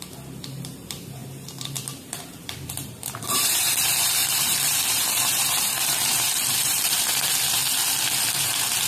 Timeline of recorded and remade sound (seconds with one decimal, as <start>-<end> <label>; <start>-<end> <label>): 0.0-7.6 remade; 7.6-8.3 recorded; 8.3-8.9 remade